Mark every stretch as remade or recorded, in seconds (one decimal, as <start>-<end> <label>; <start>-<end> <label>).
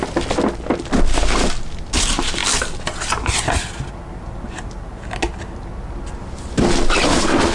0.0-7.5 recorded